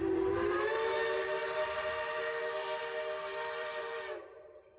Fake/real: fake